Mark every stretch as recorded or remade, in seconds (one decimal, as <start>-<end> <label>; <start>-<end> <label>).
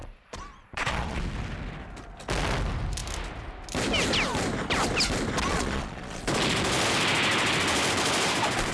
0.0-1.2 remade; 1.2-5.5 recorded; 5.5-6.2 remade; 6.2-8.7 recorded